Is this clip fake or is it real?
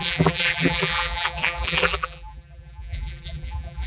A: fake